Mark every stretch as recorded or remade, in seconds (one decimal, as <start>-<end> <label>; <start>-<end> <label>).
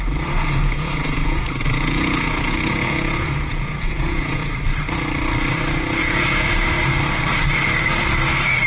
0.0-0.6 recorded; 0.6-4.6 remade; 4.6-6.0 recorded; 6.0-6.5 remade; 6.5-8.7 recorded